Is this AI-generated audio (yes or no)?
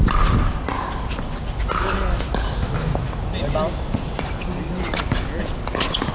no